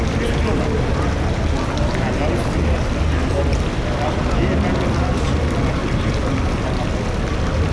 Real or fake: real